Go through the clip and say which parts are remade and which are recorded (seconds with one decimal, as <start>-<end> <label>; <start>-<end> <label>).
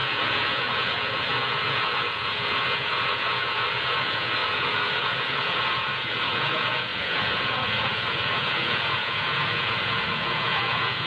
0.0-11.1 remade